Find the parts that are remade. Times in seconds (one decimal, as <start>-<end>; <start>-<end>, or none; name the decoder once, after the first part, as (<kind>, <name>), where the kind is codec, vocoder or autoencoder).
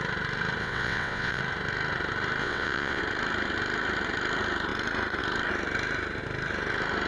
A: 0.6-1.4 (vocoder, WaveNeXt); 2.4-3.0